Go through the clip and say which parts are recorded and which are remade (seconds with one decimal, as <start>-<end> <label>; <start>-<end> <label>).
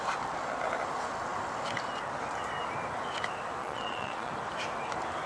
0.0-3.6 recorded; 3.6-4.3 remade; 4.3-5.3 recorded